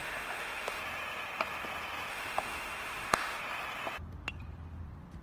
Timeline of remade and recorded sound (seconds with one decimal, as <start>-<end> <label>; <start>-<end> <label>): 0.0-0.8 remade; 0.8-2.1 recorded; 2.1-3.4 remade; 3.4-5.2 recorded